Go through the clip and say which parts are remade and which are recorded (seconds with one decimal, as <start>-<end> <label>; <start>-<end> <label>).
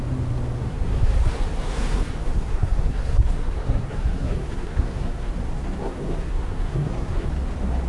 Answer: 0.0-0.6 recorded; 0.6-5.3 remade; 5.3-5.8 recorded; 5.8-7.3 remade; 7.3-7.9 recorded